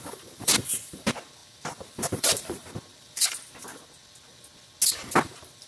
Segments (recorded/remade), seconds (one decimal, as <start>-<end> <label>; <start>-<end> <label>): 0.0-3.6 remade; 3.6-5.2 recorded; 5.2-5.7 remade